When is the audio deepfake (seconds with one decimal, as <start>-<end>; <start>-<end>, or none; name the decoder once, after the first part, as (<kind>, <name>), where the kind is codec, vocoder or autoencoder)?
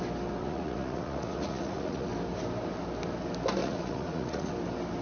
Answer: 0.4-2.1 (vocoder, Vocos); 3.6-4.5